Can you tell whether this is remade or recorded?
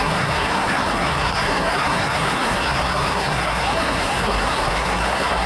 remade